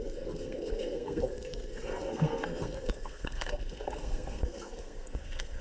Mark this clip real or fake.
fake